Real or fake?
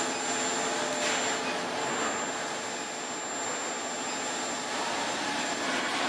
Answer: real